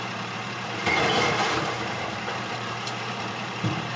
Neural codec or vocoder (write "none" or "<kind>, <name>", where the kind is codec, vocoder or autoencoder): vocoder, BigVGAN v2